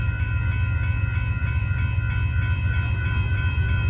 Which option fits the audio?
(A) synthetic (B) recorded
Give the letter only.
A